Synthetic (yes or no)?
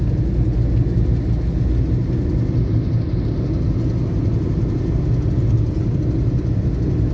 no